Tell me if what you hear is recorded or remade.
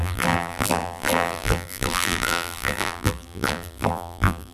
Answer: remade